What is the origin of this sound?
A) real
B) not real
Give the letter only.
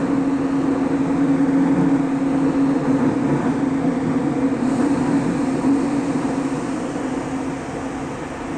A